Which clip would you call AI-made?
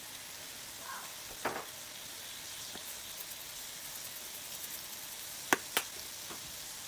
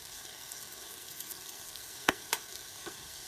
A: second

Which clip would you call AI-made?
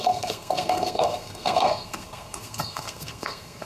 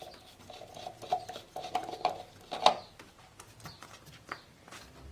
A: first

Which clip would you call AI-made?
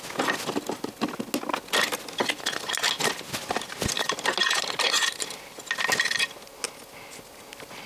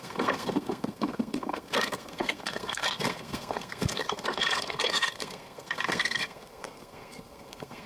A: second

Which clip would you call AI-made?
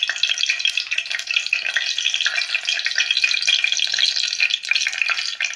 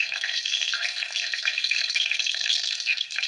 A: second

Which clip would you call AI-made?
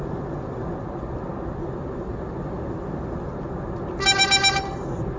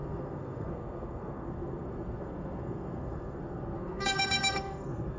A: second